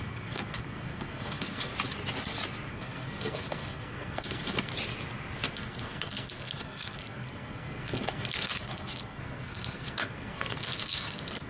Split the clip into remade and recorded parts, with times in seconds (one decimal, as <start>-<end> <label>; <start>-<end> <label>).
0.0-1.7 remade; 1.7-2.7 recorded; 2.7-4.7 remade; 4.7-5.5 recorded; 5.5-11.5 remade